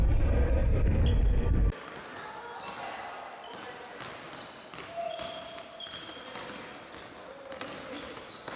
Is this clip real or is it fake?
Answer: real